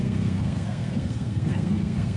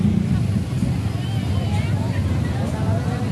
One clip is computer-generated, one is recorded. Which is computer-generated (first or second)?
first